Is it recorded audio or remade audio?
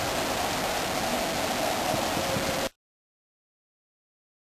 recorded